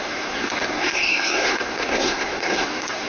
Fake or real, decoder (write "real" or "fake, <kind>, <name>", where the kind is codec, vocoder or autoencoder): fake, codec, SNAC